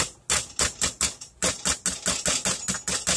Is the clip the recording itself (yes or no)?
yes